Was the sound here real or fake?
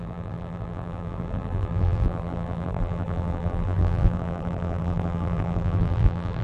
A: fake